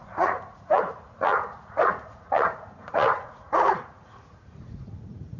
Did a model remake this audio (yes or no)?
yes